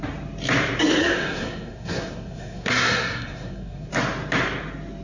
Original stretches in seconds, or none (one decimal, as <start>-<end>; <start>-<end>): 0.0-1.0; 3.9-5.0